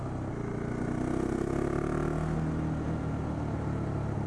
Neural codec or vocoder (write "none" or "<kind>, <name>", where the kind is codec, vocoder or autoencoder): none